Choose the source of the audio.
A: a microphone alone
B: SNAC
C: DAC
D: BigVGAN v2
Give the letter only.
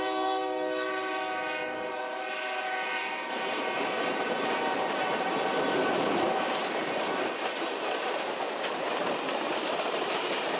D